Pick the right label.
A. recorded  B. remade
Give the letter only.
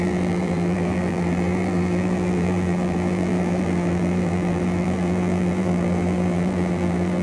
B